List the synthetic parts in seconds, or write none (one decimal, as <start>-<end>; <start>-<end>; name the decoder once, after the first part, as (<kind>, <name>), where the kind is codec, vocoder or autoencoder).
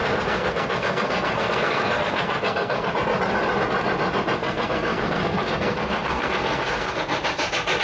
0.0-2.9 (codec, SNAC); 4.4-7.0